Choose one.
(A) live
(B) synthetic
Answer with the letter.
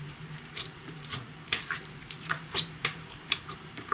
B